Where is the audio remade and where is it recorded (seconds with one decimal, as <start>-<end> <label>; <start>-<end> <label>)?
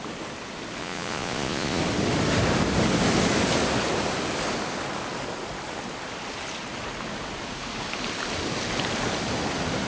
0.0-0.8 recorded; 0.8-1.8 remade; 1.8-9.9 recorded